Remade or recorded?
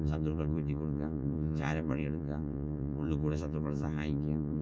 remade